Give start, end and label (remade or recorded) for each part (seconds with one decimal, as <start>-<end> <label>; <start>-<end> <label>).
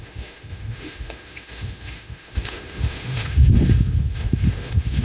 0.0-5.0 remade